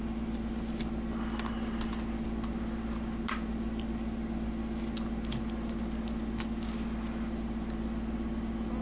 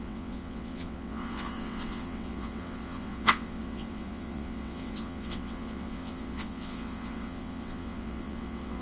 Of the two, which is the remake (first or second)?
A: second